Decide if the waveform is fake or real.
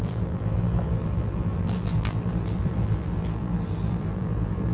fake